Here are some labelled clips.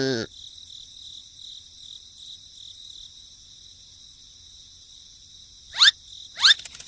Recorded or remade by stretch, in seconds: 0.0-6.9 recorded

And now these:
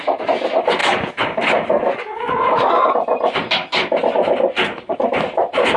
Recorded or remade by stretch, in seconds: 0.0-0.8 recorded; 0.8-2.9 remade; 2.9-5.8 recorded

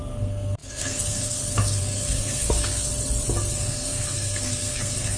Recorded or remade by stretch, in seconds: 0.0-2.9 remade; 2.9-3.5 recorded; 3.5-5.2 remade

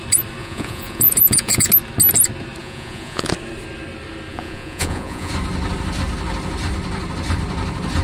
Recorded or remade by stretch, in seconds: 0.0-0.4 recorded; 0.4-1.7 remade; 1.7-2.6 recorded; 2.6-3.3 remade; 3.3-4.3 recorded; 4.3-5.3 remade; 5.3-8.0 recorded